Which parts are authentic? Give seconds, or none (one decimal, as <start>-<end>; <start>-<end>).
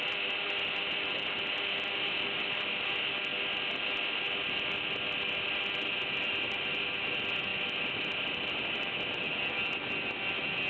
0.0-3.3; 5.6-7.5; 9.9-10.7